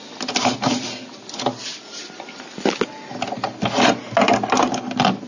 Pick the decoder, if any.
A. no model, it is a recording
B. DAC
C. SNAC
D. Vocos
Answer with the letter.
A